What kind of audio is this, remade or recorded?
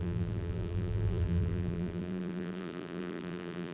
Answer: remade